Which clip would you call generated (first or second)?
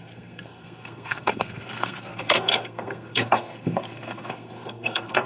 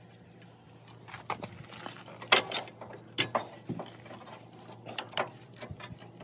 first